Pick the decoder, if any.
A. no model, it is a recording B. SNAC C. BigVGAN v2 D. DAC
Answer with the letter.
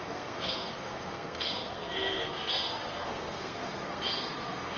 B